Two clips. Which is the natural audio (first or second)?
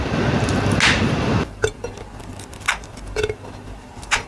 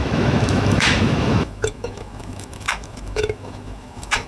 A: first